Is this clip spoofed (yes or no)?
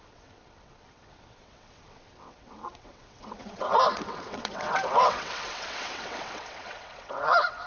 yes